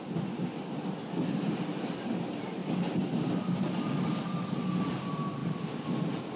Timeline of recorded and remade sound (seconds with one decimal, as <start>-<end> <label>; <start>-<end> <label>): 0.0-6.4 recorded